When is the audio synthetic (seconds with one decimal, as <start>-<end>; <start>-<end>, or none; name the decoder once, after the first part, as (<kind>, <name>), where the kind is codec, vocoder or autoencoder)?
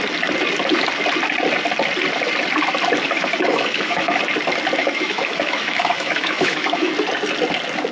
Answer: 3.2-4.2 (autoencoder, DAC-VAE); 4.8-6.9